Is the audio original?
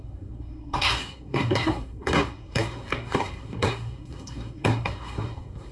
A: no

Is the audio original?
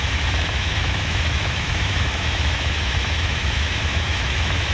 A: no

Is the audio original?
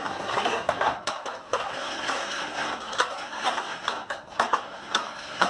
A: no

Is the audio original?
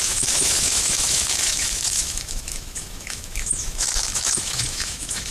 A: no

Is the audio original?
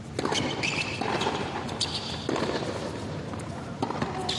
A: yes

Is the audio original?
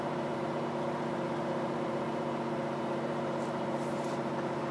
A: no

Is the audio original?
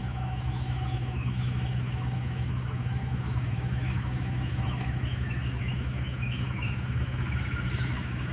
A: no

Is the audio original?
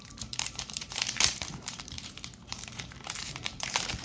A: no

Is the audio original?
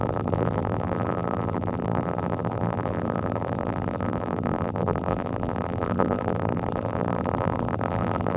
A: no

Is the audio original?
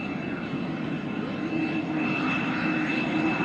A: yes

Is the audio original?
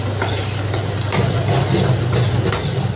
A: yes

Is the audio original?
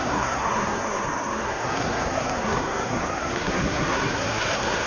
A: no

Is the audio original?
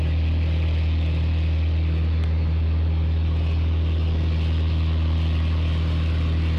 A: yes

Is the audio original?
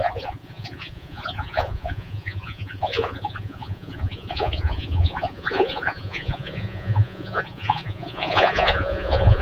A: no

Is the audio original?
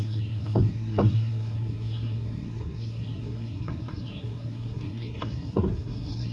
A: no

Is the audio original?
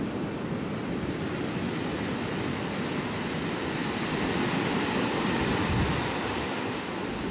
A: yes